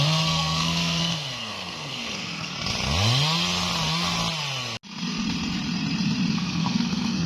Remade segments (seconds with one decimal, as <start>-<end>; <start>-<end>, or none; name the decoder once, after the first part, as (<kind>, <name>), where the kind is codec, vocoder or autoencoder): 0.0-2.5 (codec, SNAC); 6.3-7.3